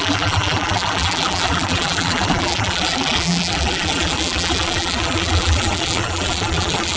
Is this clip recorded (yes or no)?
no